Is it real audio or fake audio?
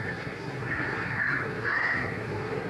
fake